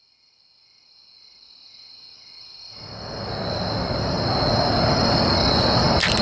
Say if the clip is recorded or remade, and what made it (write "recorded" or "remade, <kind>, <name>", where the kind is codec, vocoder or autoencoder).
recorded